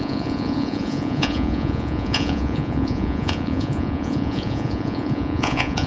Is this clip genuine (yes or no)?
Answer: no